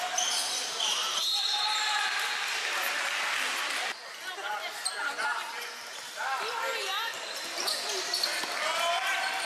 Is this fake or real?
real